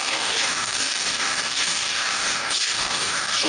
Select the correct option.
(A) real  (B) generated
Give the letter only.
B